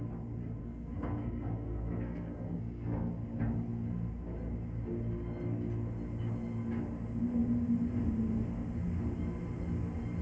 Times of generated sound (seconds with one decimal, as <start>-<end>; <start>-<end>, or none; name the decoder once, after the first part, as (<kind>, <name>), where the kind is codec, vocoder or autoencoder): 0.6-3.1 (codec, SNAC)